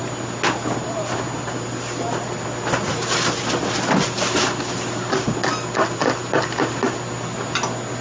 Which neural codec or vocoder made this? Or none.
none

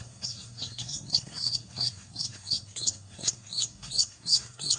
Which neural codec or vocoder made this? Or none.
codec, SNAC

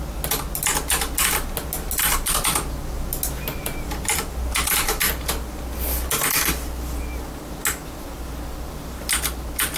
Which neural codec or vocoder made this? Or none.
none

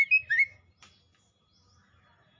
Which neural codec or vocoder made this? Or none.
none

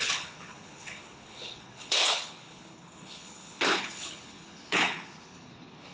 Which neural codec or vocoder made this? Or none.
codec, HILCodec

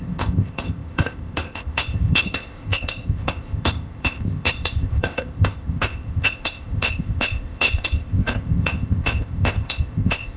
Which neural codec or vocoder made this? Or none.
codec, ZipCodec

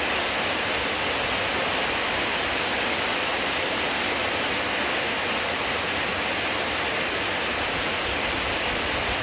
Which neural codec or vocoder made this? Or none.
none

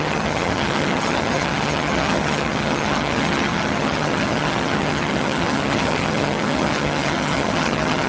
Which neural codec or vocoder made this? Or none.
vocoder, HiFi-GAN